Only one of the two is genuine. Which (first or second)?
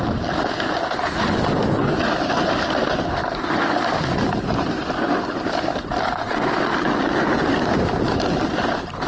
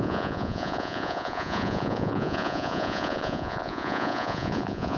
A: first